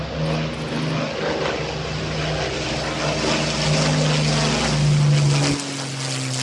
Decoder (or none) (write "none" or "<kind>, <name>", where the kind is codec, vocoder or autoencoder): none